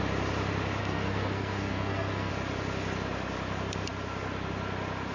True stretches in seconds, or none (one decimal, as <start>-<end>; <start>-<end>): 0.0-0.8; 2.3-5.1